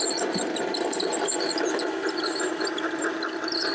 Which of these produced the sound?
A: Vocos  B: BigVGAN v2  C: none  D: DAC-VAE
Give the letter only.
B